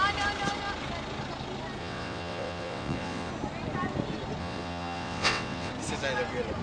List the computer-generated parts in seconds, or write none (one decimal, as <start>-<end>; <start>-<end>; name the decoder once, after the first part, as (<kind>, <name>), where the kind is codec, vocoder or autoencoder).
1.8-3.3 (vocoder, WaveNeXt); 4.4-5.7